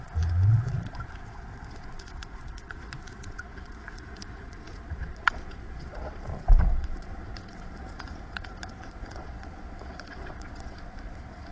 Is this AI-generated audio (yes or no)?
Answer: yes